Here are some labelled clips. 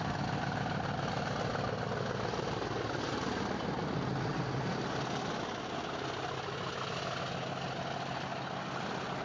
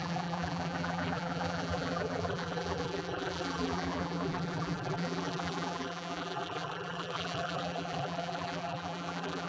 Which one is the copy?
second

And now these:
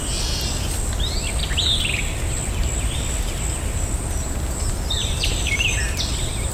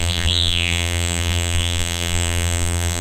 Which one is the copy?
second